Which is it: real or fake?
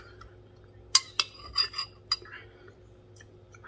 real